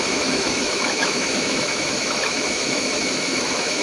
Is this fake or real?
fake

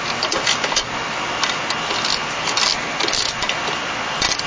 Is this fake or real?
real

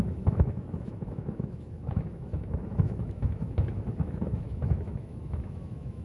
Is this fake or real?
fake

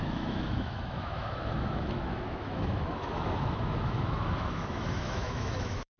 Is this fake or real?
fake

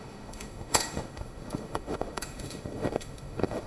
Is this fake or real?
fake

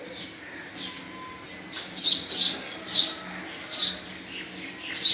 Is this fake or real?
real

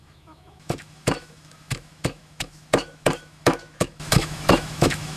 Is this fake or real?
fake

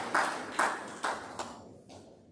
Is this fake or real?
real